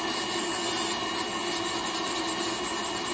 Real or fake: real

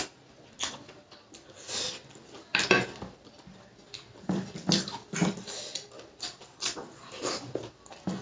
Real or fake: real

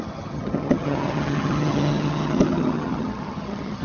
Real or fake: fake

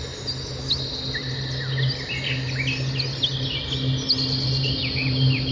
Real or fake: real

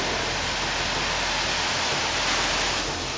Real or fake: real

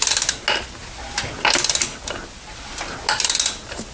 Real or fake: real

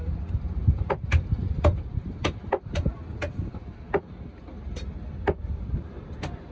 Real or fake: real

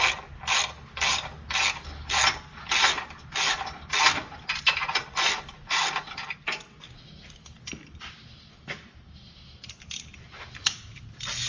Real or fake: real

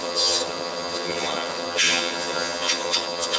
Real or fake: fake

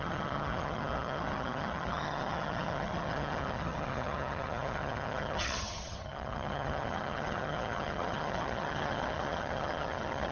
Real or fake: fake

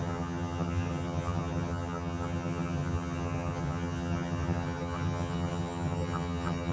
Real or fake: fake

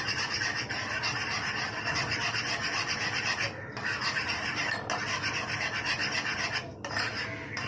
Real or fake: real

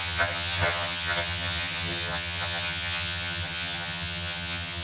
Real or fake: fake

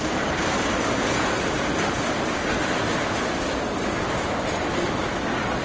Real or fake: real